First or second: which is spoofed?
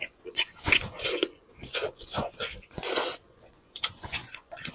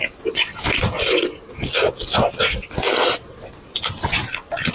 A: first